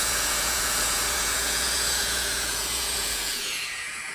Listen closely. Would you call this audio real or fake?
fake